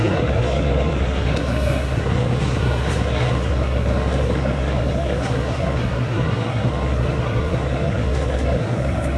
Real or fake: fake